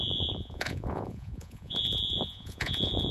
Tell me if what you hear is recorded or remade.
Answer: remade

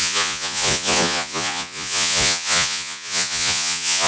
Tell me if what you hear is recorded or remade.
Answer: remade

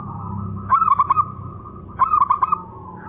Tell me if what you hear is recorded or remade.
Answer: recorded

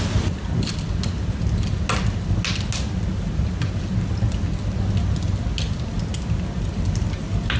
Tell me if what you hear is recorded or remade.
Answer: recorded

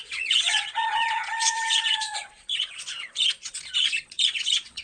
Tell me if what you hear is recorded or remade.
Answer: remade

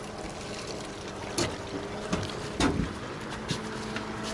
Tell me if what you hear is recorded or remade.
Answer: recorded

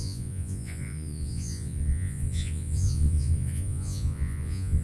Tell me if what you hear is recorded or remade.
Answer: remade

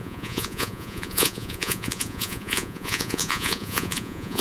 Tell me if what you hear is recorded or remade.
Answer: remade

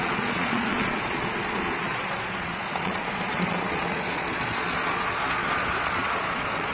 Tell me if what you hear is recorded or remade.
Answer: remade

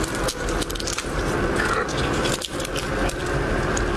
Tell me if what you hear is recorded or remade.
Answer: recorded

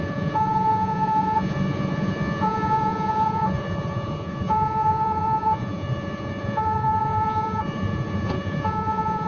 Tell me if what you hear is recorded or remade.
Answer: remade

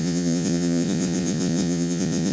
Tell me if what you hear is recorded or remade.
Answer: remade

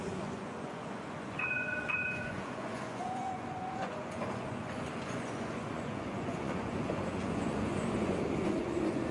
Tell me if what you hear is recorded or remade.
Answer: remade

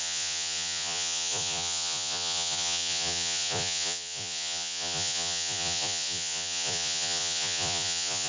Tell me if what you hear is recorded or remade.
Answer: remade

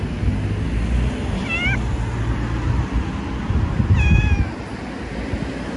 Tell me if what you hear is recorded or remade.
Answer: recorded